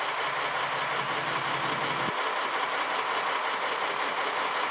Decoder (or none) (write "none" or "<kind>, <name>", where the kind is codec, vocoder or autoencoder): none